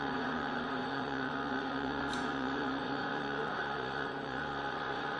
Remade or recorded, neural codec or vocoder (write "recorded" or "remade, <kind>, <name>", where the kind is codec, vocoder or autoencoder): remade, vocoder, Vocos